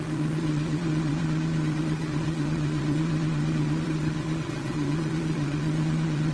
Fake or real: fake